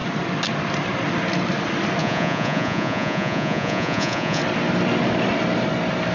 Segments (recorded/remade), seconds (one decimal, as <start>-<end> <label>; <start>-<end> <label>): 0.0-2.0 recorded; 2.0-4.4 remade; 4.4-6.1 recorded